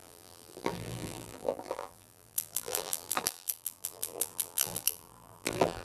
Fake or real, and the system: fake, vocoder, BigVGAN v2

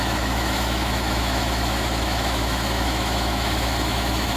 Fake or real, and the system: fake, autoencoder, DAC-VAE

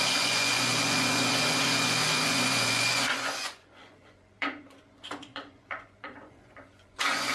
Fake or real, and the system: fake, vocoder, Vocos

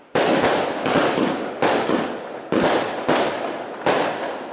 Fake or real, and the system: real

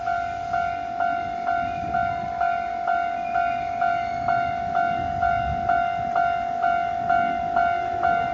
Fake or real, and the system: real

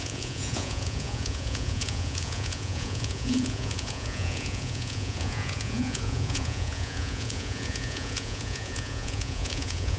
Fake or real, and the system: fake, vocoder, Vocos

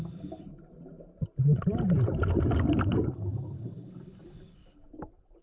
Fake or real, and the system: real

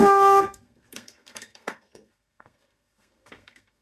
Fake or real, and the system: fake, codec, SNAC